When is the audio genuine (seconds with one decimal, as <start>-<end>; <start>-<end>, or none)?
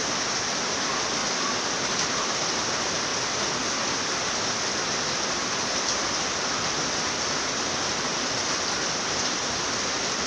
1.2-1.8; 3.1-3.9